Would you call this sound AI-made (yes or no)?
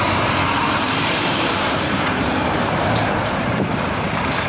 yes